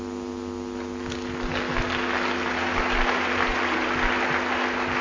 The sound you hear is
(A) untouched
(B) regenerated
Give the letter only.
A